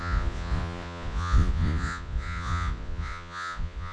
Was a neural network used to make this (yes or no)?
yes